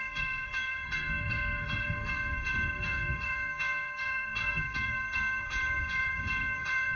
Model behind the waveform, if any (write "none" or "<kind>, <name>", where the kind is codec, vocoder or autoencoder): codec, SNAC